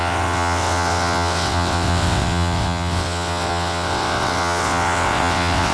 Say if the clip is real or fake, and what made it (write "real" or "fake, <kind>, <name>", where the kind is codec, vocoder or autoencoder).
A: fake, vocoder, WaveNeXt